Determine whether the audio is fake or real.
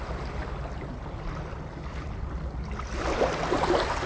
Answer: real